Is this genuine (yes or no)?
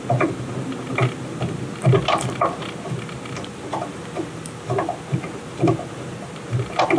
yes